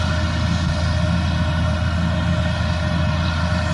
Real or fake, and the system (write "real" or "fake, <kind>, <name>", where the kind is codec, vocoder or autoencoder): real